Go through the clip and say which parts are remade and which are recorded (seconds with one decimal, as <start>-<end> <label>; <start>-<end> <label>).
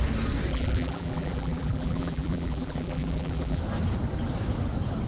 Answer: 0.0-0.5 recorded; 0.5-3.6 remade; 3.6-5.1 recorded